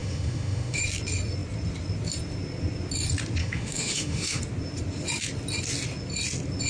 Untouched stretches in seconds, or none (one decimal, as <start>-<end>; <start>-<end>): 0.8-3.4; 4.4-6.7